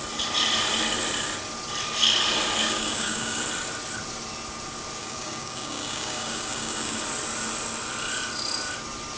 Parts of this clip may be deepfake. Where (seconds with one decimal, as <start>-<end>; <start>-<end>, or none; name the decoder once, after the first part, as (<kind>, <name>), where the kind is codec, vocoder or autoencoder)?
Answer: 2.6-3.4 (codec, DAC); 5.0-7.0